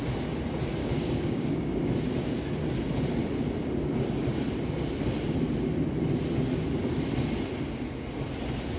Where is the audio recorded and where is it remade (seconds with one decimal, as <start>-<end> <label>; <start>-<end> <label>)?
0.0-0.8 recorded; 0.8-1.8 remade; 1.8-8.8 recorded